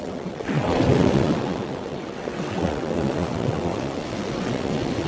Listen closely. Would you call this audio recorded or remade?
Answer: remade